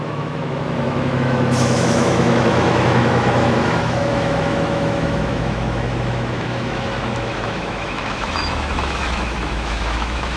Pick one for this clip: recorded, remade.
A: remade